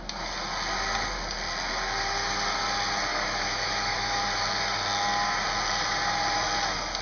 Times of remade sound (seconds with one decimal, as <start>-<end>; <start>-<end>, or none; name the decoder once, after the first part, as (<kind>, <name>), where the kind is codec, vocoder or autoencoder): 3.1-4.2 (autoencoder, DAC-VAE)